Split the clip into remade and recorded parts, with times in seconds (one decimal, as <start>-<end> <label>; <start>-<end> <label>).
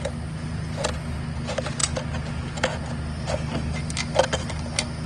0.0-5.1 recorded